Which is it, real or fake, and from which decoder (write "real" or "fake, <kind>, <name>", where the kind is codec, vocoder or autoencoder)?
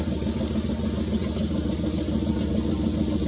real